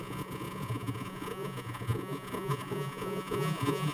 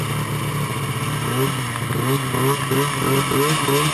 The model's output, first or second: first